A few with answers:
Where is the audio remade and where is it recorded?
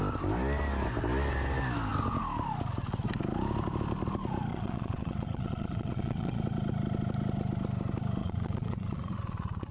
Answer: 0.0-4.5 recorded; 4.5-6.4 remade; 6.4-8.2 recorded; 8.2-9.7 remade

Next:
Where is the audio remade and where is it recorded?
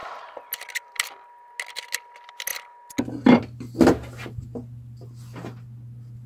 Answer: 0.0-6.3 recorded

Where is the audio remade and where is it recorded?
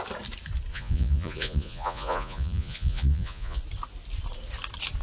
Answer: 0.0-0.7 recorded; 0.7-3.6 remade; 3.6-5.0 recorded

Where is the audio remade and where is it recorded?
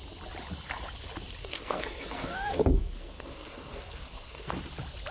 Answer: 0.0-1.4 recorded; 1.4-4.5 remade; 4.5-5.1 recorded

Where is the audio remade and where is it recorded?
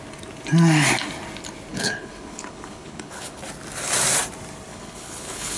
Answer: 0.0-1.7 recorded; 1.7-3.4 remade; 3.4-4.7 recorded; 4.7-5.6 remade